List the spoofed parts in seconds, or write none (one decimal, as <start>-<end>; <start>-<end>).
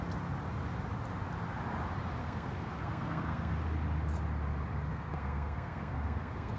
2.2-3.5; 4.9-6.6